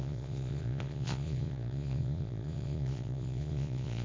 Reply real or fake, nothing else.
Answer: fake